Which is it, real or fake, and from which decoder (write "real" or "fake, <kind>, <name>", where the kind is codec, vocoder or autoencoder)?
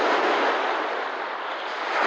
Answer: real